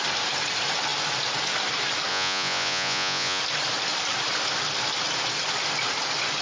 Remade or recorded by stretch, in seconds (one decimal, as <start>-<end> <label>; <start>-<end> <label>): 0.0-2.1 recorded; 2.1-3.4 remade; 3.4-6.4 recorded